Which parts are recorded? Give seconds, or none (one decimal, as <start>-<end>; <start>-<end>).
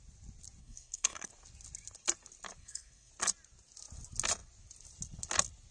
0.0-0.6; 1.3-2.6; 3.1-5.7